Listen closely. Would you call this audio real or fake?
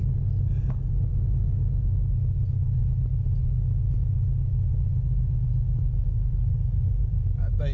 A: real